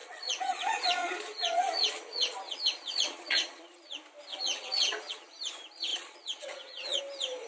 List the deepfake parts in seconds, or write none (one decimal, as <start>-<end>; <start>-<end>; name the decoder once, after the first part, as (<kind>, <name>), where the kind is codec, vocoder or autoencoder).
0.0-3.9 (vocoder, Vocos); 4.3-5.3; 5.9-7.0